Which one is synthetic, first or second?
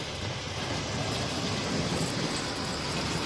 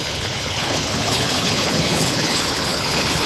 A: second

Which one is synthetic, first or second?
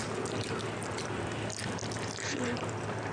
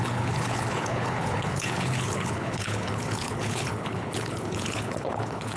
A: second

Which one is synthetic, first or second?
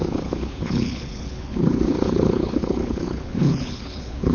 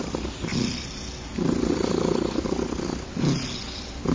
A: first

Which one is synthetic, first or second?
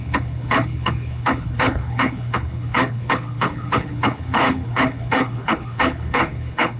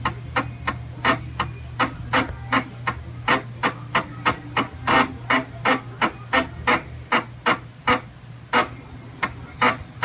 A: first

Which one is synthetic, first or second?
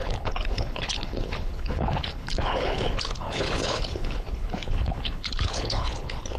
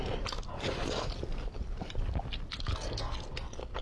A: first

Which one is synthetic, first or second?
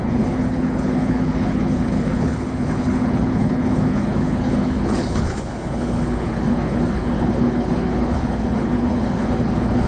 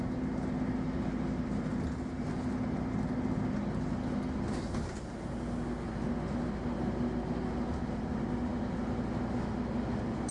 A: first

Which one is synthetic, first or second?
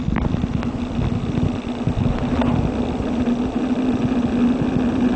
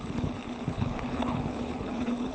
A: second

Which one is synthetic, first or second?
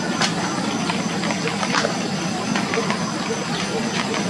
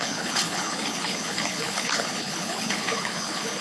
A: second